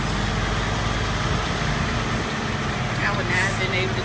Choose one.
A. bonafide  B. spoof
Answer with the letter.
A